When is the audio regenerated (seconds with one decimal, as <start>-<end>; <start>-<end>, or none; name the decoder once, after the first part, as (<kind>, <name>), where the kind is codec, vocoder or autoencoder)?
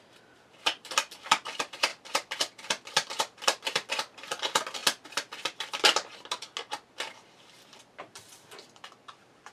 0.0-1.9 (vocoder, BigVGAN v2); 2.9-4.8; 7.1-9.5